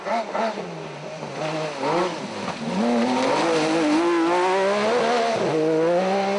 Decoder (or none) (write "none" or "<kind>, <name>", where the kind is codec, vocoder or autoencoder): none